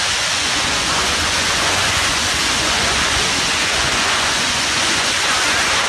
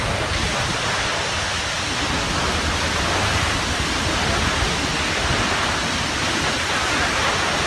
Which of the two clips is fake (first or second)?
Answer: first